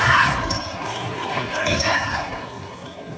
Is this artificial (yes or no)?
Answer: yes